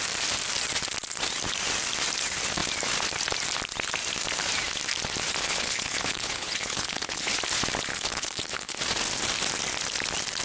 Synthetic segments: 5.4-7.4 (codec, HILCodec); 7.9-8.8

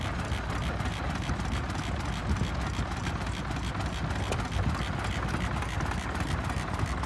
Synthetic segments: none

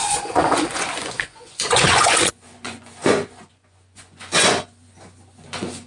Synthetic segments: 0.0-5.9 (vocoder, Vocos)

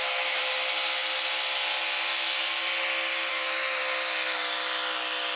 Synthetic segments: 0.0-0.4 (autoencoder, DAC-VAE); 3.3-3.8

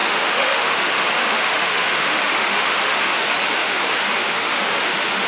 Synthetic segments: 0.0-3.2 (autoencoder, DAC-VAE); 3.6-5.3

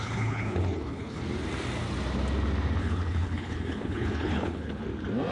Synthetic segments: 0.0-1.2 (codec, HILCodec); 2.8-4.8